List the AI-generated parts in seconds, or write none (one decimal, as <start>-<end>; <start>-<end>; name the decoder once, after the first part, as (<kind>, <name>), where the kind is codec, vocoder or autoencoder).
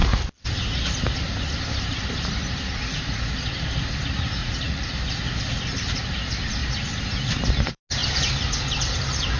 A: 4.4-4.9 (vocoder, Vocos)